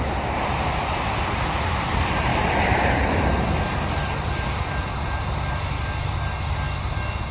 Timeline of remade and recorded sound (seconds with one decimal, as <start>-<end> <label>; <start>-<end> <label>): 0.0-7.3 recorded